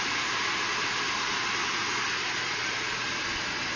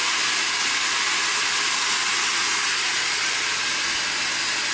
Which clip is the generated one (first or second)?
first